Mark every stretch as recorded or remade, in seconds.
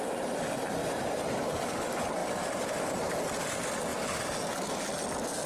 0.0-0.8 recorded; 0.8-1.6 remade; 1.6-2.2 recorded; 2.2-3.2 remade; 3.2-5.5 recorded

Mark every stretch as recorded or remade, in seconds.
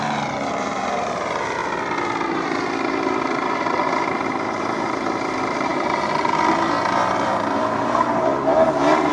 0.0-1.6 remade; 1.6-2.3 recorded; 2.3-9.1 remade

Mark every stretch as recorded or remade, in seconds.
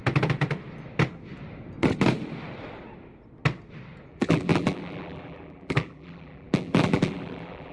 0.0-4.1 recorded; 4.1-7.7 remade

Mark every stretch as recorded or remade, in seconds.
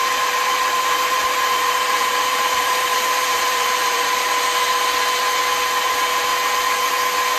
0.0-4.3 remade; 4.3-7.4 recorded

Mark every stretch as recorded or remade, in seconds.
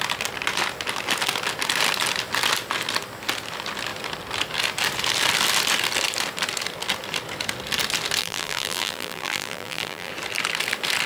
0.0-8.2 recorded; 8.2-10.1 remade; 10.1-11.1 recorded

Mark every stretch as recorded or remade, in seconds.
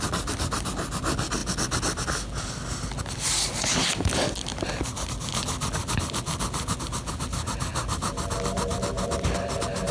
0.0-9.9 recorded